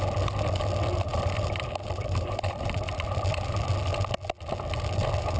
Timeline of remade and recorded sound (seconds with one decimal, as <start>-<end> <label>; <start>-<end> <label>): 0.0-1.1 recorded; 1.1-3.7 remade; 3.7-5.4 recorded